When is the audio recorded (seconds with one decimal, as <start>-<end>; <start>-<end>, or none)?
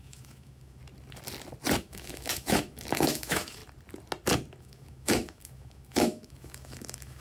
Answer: 0.8-1.8; 3.6-4.6